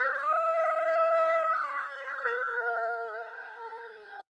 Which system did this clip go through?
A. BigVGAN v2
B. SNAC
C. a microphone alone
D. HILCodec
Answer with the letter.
B